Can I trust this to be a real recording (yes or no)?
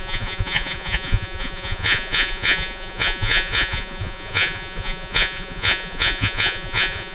no